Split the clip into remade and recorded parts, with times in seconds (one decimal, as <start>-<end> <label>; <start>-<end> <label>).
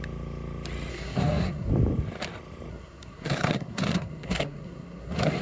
0.0-0.9 recorded; 0.9-1.7 remade; 1.7-2.7 recorded; 2.7-5.4 remade